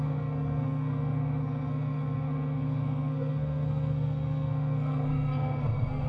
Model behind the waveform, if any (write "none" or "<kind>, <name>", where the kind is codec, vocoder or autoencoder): codec, SNAC